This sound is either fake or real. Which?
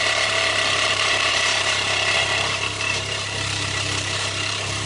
fake